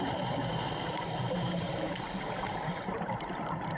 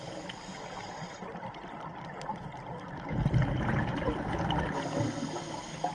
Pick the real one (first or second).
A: second